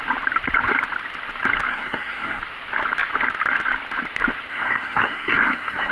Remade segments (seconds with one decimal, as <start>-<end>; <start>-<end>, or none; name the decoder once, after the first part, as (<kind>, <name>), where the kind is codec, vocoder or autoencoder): 1.7-2.4 (codec, SNAC); 4.5-5.9

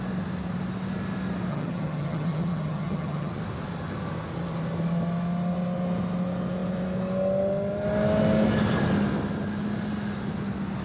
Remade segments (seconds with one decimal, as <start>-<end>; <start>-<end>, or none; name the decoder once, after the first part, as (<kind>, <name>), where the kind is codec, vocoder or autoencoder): 1.5-3.3 (vocoder, HiFi-GAN)